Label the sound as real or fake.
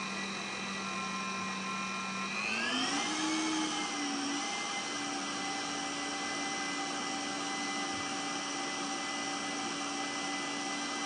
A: real